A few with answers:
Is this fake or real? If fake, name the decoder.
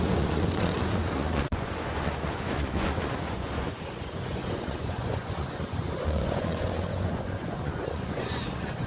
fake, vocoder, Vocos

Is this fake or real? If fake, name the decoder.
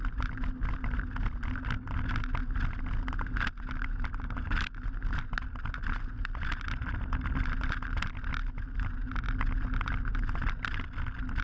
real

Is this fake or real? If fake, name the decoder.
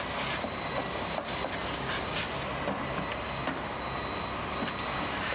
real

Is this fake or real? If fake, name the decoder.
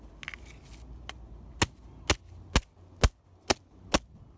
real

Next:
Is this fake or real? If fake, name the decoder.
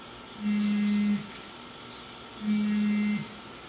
real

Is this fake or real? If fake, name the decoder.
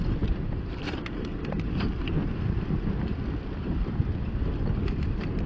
real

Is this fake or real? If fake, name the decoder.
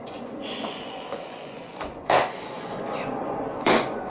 fake, vocoder, Vocos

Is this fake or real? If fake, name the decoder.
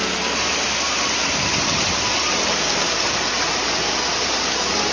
real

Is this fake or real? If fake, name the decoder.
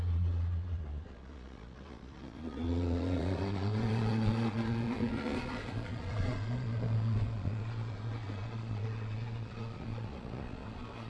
fake, vocoder, Vocos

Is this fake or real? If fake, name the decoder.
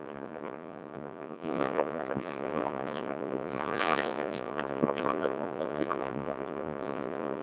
fake, vocoder, Vocos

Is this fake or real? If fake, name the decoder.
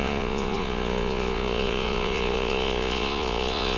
fake, vocoder, Vocos